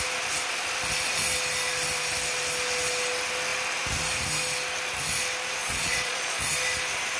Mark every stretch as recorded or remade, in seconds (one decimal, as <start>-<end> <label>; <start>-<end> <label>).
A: 0.0-5.6 recorded; 5.6-6.4 remade; 6.4-7.2 recorded